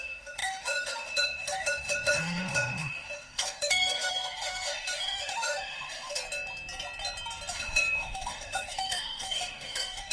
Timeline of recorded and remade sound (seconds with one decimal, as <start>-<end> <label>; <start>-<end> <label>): 0.0-6.2 remade; 6.2-7.5 recorded; 7.5-10.1 remade